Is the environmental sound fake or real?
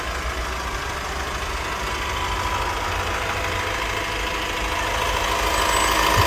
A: real